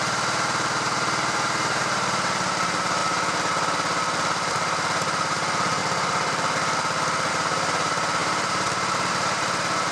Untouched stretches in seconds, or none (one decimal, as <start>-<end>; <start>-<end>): 3.0-4.5; 5.8-7.3